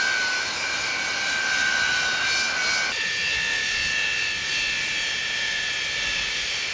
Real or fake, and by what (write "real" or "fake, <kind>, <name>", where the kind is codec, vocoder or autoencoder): real